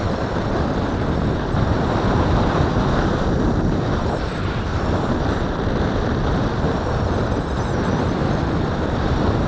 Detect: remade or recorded remade